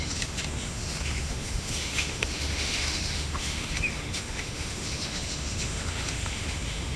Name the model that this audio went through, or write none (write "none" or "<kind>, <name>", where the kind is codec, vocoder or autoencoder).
autoencoder, DAC-VAE